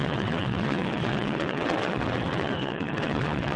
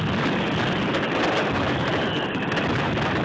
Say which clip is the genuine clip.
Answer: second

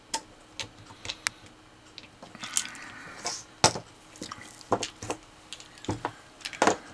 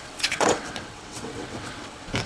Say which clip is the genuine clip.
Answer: first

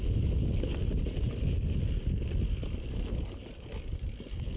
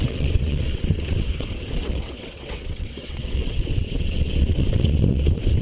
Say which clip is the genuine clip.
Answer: first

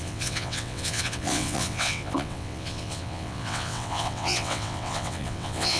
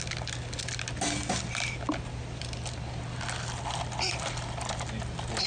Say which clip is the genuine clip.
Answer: second